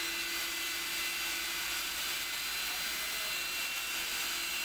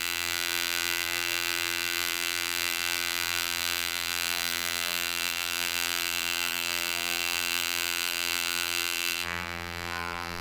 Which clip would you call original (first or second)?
first